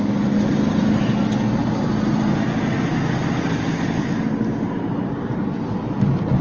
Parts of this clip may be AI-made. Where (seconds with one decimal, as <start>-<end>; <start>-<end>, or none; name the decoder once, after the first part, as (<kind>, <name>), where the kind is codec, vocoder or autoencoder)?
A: none